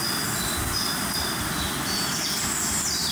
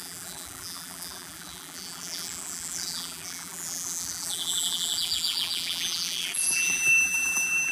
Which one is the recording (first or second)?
first